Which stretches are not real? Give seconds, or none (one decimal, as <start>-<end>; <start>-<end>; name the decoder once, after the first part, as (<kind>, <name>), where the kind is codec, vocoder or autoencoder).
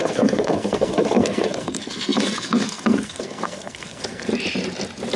0.0-4.3 (codec, SNAC)